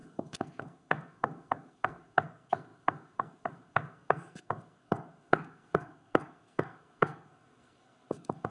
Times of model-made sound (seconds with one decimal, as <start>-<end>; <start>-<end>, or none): 0.0-8.5

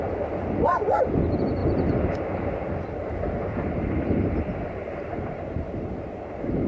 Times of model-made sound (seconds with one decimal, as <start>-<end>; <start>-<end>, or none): 1.6-5.6

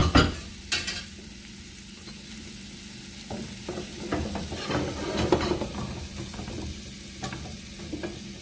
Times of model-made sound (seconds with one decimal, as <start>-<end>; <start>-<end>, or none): none

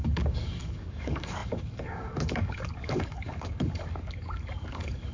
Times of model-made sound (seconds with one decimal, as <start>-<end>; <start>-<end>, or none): 0.0-5.1

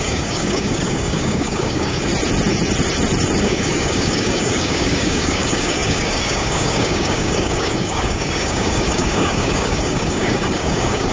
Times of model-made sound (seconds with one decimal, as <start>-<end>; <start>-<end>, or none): 0.0-2.1; 3.4-11.1